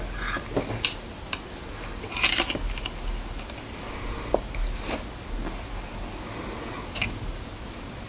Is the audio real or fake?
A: real